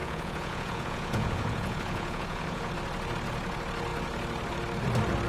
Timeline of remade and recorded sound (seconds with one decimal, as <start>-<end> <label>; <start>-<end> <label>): 0.0-2.7 remade; 2.7-5.3 recorded